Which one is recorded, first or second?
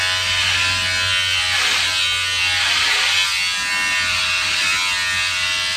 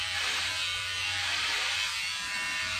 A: first